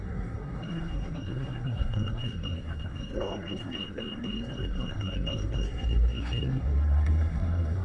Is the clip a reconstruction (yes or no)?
yes